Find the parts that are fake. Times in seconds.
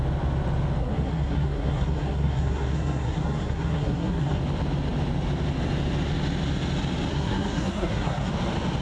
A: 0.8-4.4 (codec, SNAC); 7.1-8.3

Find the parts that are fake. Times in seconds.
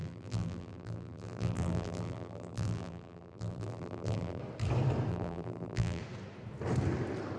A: 0.0-4.4 (vocoder, BigVGAN v2); 5.1-6.0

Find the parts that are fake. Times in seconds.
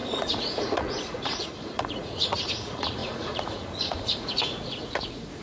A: 0.0-5.4 (vocoder, Vocos)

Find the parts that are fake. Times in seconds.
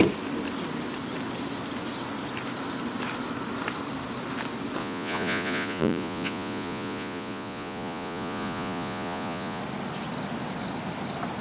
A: 4.8-9.6 (vocoder, Vocos)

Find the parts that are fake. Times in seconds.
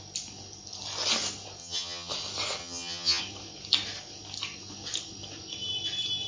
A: 1.6-2.1 (vocoder, HiFi-GAN); 2.6-3.2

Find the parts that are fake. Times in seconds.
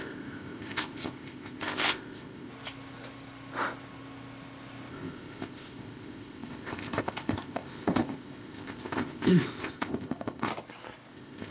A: 0.0-2.5 (codec, ZipCodec); 4.9-10.5; 11.1-11.5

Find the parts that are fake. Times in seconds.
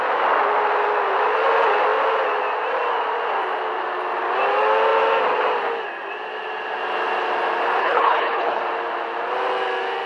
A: 7.8-8.6 (codec, HILCodec)